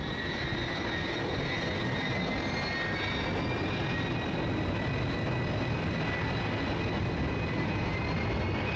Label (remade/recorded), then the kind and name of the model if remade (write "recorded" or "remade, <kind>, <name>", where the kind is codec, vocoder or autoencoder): recorded